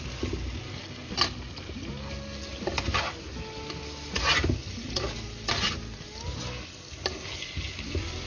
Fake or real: real